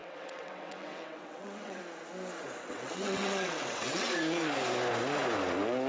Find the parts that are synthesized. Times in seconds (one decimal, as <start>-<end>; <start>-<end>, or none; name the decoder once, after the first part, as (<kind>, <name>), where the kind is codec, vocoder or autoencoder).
0.0-1.8 (vocoder, WaveNeXt); 2.7-4.1